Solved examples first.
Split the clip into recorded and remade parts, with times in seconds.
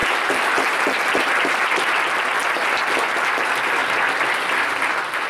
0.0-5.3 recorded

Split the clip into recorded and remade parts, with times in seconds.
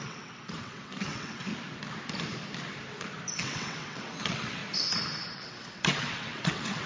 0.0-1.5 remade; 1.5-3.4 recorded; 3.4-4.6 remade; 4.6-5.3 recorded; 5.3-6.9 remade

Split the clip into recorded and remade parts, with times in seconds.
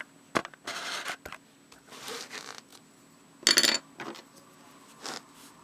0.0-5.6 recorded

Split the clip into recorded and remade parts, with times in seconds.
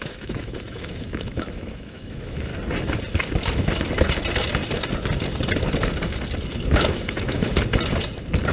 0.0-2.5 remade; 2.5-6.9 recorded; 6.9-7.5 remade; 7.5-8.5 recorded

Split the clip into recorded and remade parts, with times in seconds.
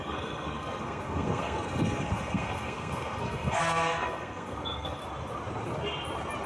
0.0-5.0 remade; 5.0-6.5 recorded